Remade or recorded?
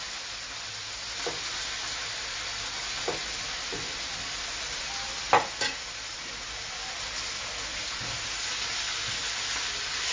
recorded